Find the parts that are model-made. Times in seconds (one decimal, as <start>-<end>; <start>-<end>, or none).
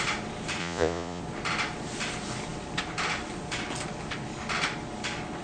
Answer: 0.6-1.2